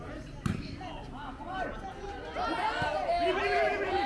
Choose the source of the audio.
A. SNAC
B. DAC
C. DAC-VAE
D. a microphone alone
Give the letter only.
D